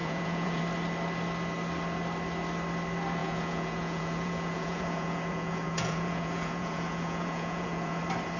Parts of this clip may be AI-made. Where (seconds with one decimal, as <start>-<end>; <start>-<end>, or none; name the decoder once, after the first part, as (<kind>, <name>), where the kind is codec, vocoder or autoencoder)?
0.0-0.6 (vocoder, Vocos); 3.2-8.0